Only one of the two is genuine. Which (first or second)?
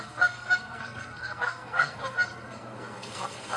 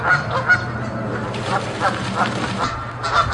second